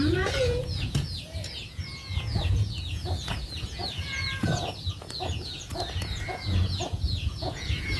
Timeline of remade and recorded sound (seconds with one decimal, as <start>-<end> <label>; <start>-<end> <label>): 0.0-8.0 remade